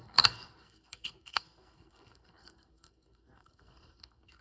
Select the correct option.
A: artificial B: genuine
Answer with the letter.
A